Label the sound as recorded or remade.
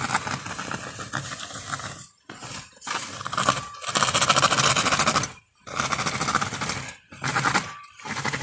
recorded